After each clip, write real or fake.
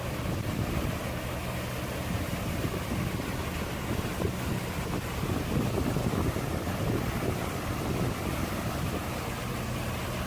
real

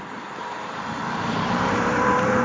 fake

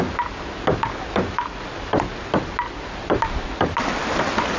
real